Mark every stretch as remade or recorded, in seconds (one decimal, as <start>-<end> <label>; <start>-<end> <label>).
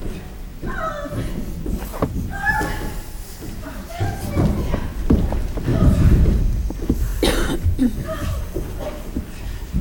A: 0.0-5.7 recorded; 5.7-6.4 remade; 6.4-9.8 recorded